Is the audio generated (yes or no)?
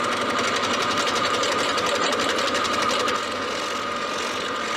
no